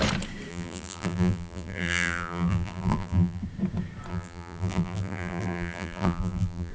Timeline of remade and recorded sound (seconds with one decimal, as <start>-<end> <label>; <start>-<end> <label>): 0.0-0.5 recorded; 0.5-3.4 remade; 3.4-4.1 recorded; 4.1-6.7 remade

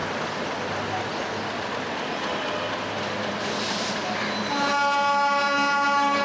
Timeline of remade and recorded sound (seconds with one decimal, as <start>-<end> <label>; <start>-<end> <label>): 0.0-6.2 recorded